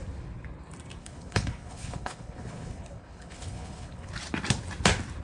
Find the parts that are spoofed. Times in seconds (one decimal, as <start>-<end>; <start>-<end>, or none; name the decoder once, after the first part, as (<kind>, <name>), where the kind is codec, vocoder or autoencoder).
1.0-4.1 (codec, HILCodec)